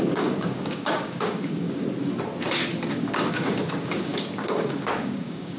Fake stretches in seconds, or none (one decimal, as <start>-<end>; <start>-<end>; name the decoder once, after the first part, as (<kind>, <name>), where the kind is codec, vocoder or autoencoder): 0.0-1.8 (codec, DAC); 2.9-5.6